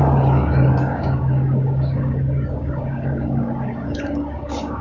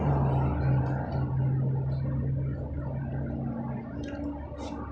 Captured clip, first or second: second